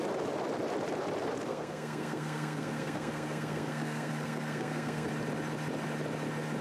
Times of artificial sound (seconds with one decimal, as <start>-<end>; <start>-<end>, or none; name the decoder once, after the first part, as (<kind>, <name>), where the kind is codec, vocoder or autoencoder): 1.5-5.1 (codec, SNAC)